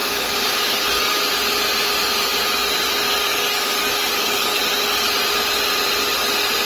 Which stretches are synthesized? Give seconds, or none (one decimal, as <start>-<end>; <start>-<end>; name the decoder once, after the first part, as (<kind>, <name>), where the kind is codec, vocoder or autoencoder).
0.0-1.3 (codec, DAC); 3.2-4.6